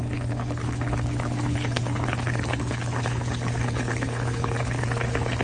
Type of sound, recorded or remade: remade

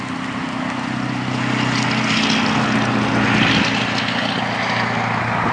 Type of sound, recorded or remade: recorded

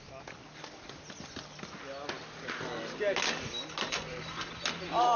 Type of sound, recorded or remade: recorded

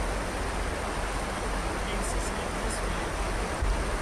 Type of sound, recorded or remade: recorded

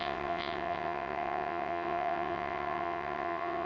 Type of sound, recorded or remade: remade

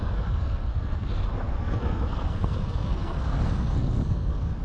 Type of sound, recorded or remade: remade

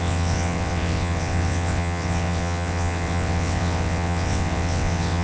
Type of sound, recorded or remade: remade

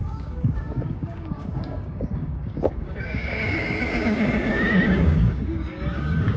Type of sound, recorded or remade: remade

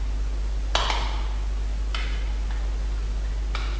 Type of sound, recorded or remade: recorded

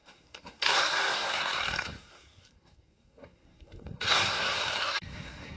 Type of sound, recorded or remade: remade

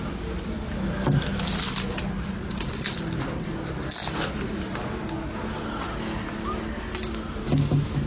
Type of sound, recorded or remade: recorded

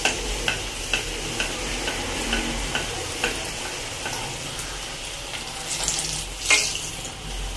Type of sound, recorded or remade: recorded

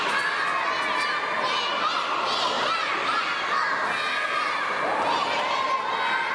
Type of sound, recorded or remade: recorded